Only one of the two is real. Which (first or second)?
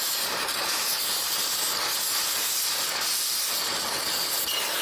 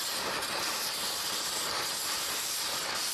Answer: first